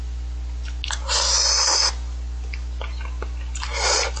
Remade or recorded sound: recorded